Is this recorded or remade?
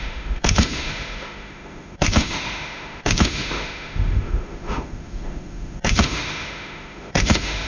remade